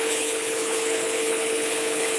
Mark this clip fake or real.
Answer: fake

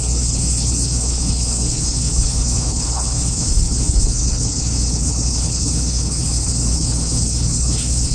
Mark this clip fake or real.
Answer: fake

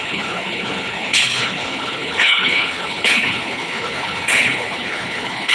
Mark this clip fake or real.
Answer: fake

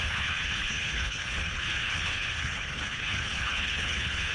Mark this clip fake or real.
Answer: fake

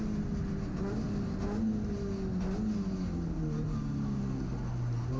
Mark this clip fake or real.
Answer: real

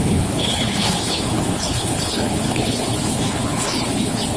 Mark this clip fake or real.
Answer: fake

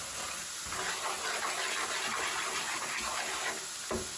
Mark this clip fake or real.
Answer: real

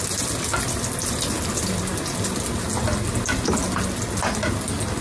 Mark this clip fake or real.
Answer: real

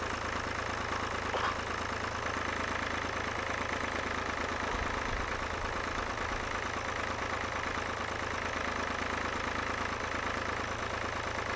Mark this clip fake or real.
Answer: real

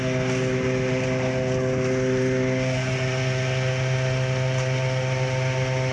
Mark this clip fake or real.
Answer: real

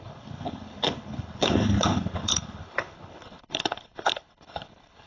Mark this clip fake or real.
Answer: fake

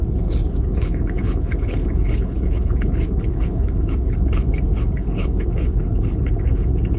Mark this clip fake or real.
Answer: fake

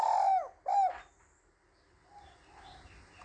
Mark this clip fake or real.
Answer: real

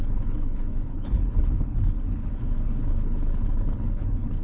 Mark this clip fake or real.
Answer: fake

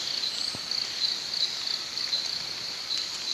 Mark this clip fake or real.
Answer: real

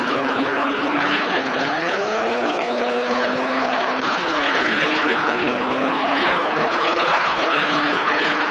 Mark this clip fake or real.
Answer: fake